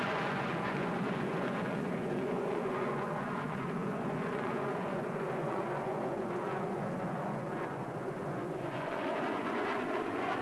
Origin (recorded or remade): remade